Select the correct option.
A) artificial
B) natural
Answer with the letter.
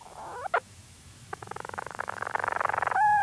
A